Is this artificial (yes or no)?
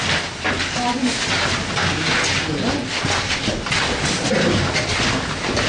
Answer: no